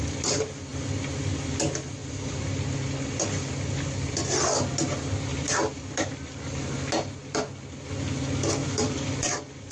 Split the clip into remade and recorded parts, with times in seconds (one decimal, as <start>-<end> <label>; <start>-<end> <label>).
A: 0.0-2.0 recorded; 2.0-4.1 remade; 4.1-5.3 recorded; 5.3-6.8 remade; 6.8-8.6 recorded; 8.6-9.7 remade